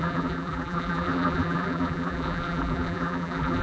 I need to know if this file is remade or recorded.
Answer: remade